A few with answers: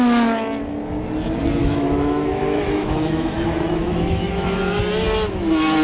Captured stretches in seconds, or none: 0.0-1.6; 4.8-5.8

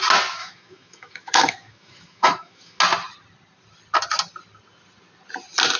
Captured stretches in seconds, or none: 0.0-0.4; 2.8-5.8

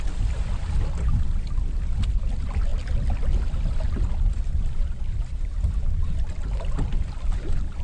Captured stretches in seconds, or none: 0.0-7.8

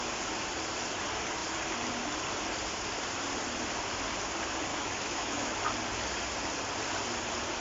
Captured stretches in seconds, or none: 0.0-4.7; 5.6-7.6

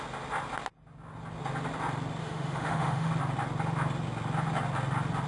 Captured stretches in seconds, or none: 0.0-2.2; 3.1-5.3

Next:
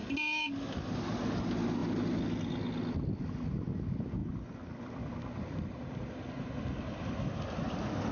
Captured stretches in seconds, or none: 0.0-8.1

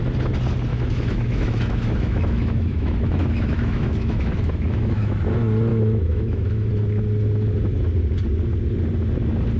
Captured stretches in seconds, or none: 0.0-0.7; 5.2-5.7; 6.7-9.6